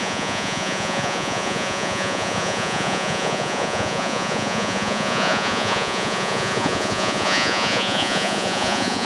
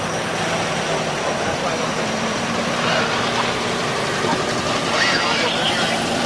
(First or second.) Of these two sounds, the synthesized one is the first